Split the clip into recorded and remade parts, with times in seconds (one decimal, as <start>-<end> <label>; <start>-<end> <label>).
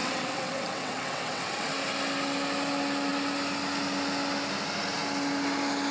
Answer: 0.0-1.7 remade; 1.7-5.9 recorded